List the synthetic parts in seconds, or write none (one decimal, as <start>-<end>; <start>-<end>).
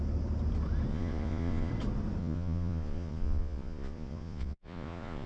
0.9-1.7; 2.2-5.3